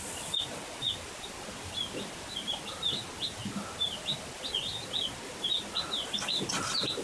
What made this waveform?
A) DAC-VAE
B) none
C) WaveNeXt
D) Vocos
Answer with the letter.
B